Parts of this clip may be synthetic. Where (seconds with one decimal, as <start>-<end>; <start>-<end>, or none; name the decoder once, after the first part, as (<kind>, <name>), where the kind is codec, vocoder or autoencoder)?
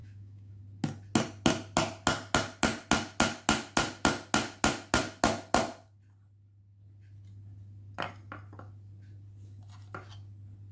0.0-0.6 (autoencoder, DAC-VAE)